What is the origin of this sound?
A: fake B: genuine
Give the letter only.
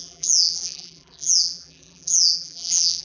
A